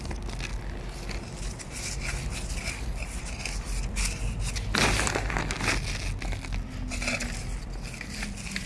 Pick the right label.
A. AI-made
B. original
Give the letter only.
B